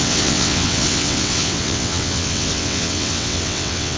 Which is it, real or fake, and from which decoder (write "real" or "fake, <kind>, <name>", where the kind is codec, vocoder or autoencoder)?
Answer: fake, vocoder, WaveNeXt